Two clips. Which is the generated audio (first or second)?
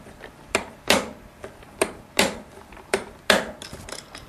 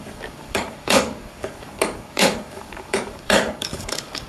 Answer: second